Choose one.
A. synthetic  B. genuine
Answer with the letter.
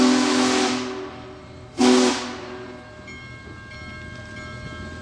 B